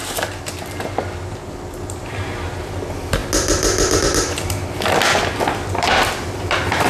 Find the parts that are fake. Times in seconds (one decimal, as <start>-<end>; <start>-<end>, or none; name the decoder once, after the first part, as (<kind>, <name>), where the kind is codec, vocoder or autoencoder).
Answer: 1.5-3.2 (vocoder, BigVGAN v2); 5.3-6.9